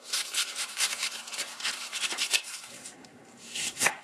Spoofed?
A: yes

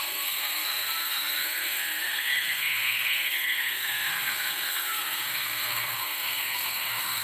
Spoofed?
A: yes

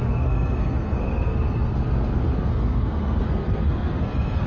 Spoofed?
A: yes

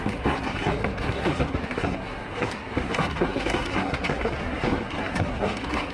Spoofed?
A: yes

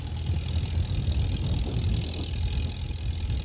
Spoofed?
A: no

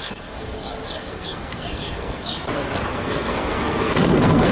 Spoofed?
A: yes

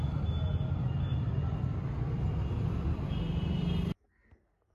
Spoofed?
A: no